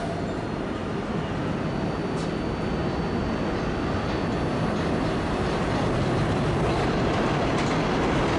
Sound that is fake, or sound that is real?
real